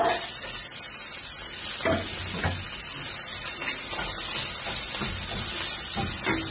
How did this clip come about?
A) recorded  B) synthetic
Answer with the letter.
A